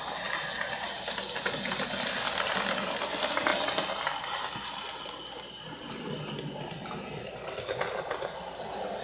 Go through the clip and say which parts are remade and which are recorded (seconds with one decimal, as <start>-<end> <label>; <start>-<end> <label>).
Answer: 0.0-9.0 recorded